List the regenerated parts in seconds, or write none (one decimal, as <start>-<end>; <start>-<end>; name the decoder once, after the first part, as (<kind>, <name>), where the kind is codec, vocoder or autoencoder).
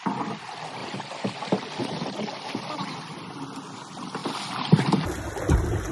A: none